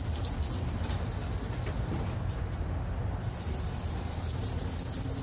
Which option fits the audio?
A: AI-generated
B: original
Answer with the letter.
B